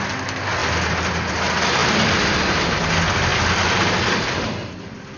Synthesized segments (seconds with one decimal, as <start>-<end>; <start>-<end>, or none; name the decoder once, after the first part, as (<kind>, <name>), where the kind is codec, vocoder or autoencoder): 0.6-1.3 (vocoder, BigVGAN v2); 1.8-2.8; 3.3-5.2